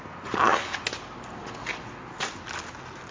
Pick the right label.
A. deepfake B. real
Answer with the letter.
B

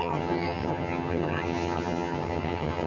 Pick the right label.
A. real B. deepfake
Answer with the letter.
B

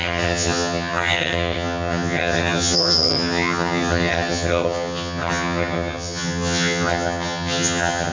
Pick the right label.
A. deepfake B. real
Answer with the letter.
A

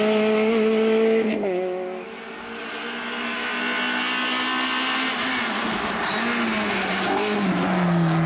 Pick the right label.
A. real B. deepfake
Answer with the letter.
A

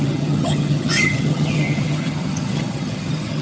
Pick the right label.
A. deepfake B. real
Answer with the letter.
A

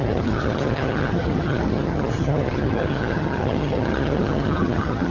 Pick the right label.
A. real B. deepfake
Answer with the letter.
B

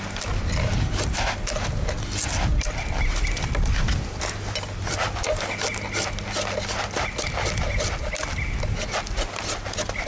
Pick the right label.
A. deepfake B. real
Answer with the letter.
B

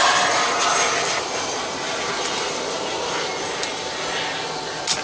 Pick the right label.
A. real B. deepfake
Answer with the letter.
A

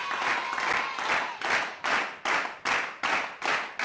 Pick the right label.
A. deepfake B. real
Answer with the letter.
B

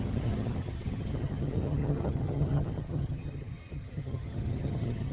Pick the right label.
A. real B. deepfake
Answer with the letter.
B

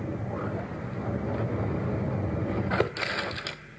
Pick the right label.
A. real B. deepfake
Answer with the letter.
A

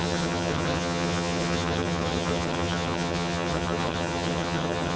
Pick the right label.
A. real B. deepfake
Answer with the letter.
B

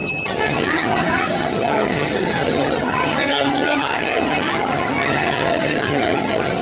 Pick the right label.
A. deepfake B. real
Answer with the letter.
A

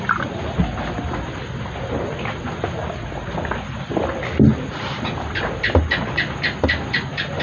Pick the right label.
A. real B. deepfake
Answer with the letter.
A